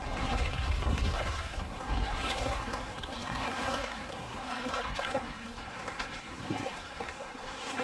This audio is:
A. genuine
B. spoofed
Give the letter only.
B